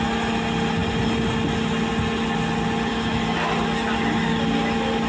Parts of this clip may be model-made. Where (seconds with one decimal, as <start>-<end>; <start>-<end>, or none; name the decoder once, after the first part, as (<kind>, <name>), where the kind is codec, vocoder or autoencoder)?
none